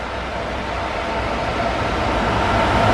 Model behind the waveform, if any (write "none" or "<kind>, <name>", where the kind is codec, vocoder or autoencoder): none